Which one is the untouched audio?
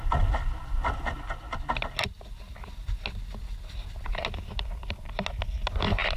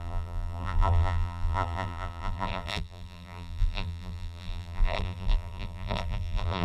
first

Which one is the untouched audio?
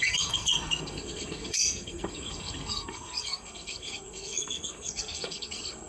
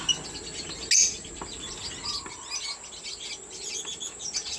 second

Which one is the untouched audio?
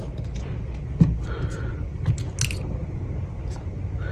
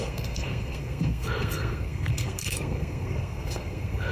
first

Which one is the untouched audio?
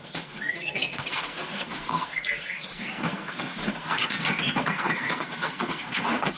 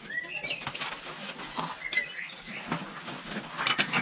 second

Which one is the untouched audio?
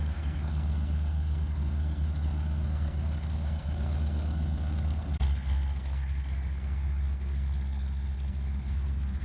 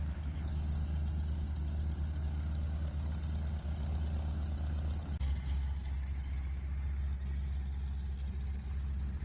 second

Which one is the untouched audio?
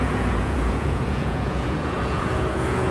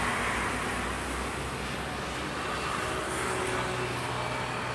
second